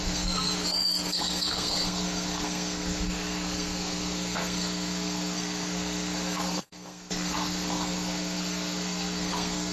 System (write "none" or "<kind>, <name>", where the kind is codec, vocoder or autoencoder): codec, SNAC